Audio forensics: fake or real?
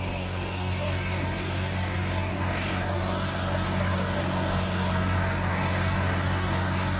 fake